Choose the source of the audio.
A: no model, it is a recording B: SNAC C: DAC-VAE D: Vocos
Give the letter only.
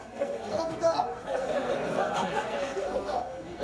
B